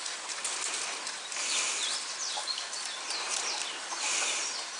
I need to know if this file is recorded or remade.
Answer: remade